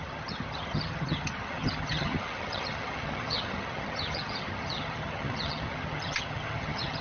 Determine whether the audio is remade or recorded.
remade